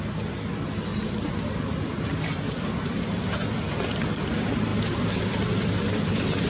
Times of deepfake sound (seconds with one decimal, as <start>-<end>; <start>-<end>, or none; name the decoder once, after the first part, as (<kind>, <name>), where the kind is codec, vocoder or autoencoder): none